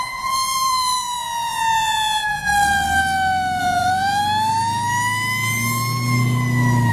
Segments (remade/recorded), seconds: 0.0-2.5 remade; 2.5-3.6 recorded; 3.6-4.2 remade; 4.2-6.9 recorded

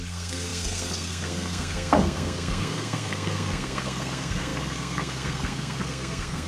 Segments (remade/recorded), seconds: 0.0-6.5 remade

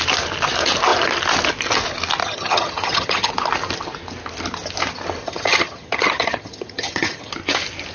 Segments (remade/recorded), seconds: 0.0-2.2 recorded; 2.2-3.3 remade; 3.3-5.2 recorded; 5.2-7.3 remade; 7.3-7.9 recorded

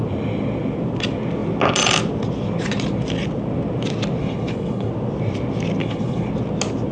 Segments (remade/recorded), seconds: 0.0-4.2 recorded; 4.2-4.9 remade; 4.9-5.8 recorded; 5.8-6.3 remade; 6.3-6.9 recorded

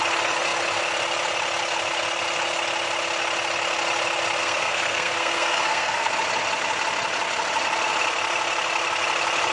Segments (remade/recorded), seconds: 0.0-4.4 recorded; 4.4-6.1 remade; 6.1-9.5 recorded

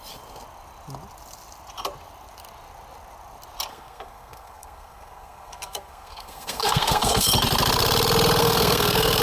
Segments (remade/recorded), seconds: 0.0-3.7 recorded; 3.7-7.3 remade; 7.3-8.4 recorded; 8.4-9.2 remade

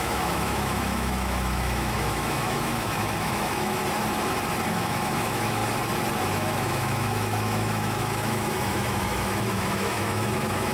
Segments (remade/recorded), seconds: 0.0-3.8 remade; 3.8-4.7 recorded; 4.7-5.6 remade; 5.6-6.2 recorded; 6.2-10.7 remade